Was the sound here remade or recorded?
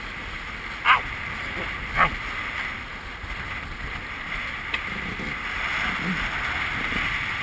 recorded